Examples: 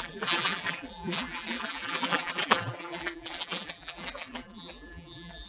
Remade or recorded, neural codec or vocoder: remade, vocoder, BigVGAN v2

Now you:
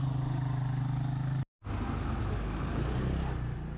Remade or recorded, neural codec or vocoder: recorded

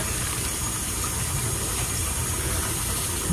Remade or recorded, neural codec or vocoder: recorded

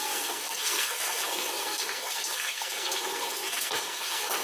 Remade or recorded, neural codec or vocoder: remade, codec, SNAC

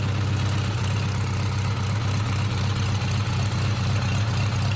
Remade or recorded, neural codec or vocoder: recorded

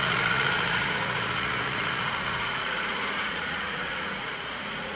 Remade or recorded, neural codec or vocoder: remade, vocoder, Vocos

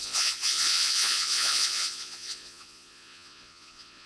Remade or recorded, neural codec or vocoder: remade, vocoder, Vocos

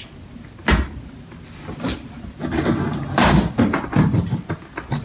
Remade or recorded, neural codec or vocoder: recorded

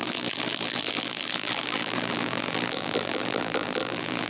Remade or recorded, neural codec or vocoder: remade, vocoder, BigVGAN v2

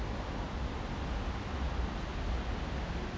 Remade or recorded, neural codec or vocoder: recorded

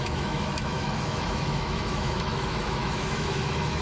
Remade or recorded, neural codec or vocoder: remade, autoencoder, DAC-VAE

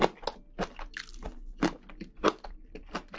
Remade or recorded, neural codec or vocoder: recorded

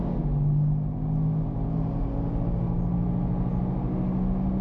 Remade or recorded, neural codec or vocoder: recorded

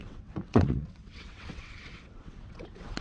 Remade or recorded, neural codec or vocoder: remade, vocoder, WaveNeXt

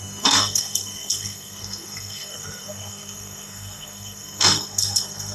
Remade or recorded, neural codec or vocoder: remade, codec, SNAC